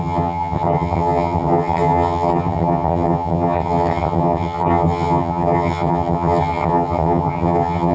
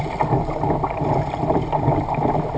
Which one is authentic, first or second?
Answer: second